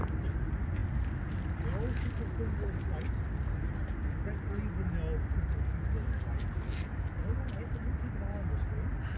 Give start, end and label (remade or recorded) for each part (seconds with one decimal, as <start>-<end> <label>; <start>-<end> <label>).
0.0-9.2 recorded